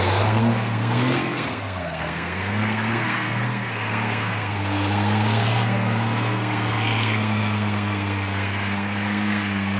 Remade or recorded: remade